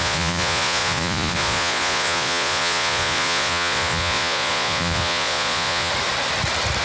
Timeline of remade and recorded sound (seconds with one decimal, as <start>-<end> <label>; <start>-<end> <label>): 0.0-5.9 remade; 5.9-6.8 recorded